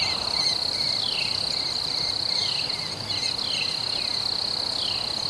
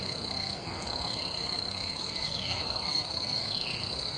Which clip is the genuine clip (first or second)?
first